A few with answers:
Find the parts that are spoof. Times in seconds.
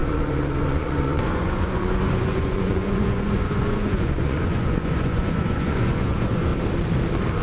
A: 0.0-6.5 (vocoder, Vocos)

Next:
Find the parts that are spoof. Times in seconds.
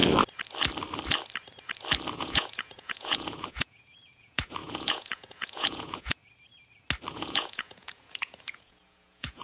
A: 2.2-6.2 (vocoder, Vocos); 7.1-9.4